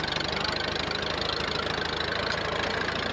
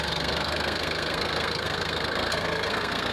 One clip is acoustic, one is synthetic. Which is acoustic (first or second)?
first